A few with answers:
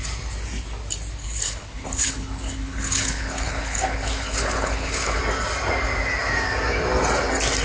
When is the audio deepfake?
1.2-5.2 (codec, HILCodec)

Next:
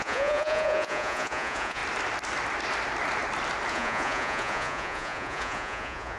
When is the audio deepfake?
0.0-1.8 (vocoder, Vocos); 3.7-6.2

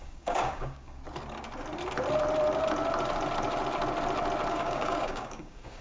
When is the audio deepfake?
0.0-1.0 (codec, DAC); 4.5-5.8

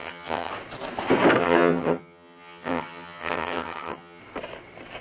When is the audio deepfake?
0.0-0.5 (vocoder, HiFi-GAN); 1.4-4.2

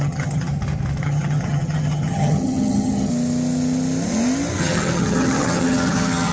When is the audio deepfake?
0.0-0.5 (vocoder, HiFi-GAN); 1.0-3.1; 4.6-6.3

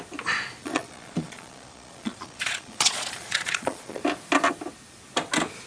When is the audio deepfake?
0.6-4.0 (vocoder, Vocos)